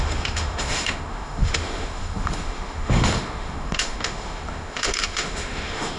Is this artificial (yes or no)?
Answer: yes